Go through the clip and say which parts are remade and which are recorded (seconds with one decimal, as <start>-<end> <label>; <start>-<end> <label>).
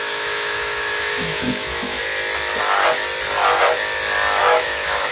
0.0-2.0 remade; 2.0-4.4 recorded; 4.4-5.1 remade